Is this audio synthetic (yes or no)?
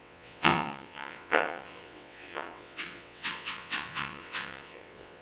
yes